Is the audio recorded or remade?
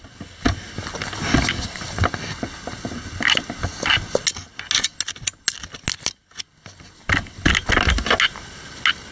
recorded